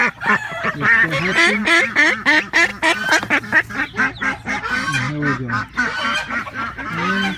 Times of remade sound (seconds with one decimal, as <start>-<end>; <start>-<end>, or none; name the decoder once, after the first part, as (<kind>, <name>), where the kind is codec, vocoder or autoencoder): none

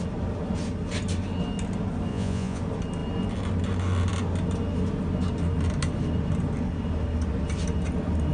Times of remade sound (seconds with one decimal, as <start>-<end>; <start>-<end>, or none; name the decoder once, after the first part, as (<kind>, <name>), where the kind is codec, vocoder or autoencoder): 2.1-2.6 (vocoder, Vocos)

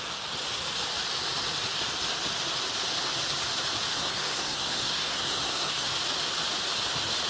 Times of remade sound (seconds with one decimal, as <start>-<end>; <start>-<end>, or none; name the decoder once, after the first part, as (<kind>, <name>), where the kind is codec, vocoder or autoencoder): 3.9-5.9 (codec, SNAC)

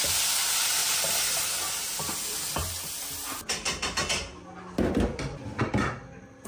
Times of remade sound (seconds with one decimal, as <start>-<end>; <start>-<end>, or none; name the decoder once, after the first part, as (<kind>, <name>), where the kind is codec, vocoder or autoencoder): none

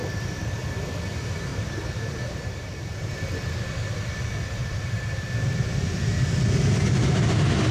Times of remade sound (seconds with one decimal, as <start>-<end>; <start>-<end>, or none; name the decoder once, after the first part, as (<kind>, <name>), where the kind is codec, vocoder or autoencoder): 0.0-0.6 (vocoder, BigVGAN v2); 1.5-3.1; 4.6-5.3

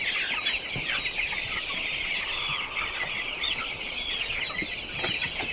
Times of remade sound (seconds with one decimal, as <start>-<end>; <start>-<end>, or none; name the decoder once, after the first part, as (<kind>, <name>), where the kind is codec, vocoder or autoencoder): 1.4-4.4 (vocoder, Vocos)

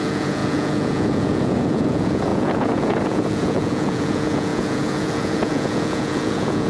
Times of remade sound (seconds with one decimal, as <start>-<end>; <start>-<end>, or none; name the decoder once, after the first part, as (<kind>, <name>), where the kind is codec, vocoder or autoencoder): 0.0-6.7 (vocoder, Vocos)